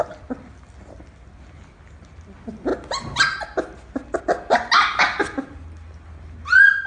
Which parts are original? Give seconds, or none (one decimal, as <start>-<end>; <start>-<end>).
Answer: 0.0-6.9